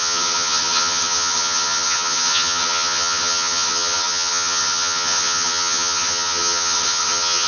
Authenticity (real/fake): fake